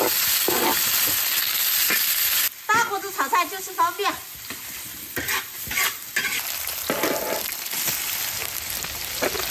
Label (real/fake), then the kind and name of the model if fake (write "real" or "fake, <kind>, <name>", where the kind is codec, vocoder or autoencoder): real